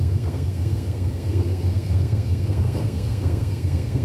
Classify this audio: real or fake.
fake